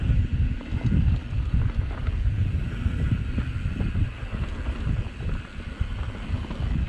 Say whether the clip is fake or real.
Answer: real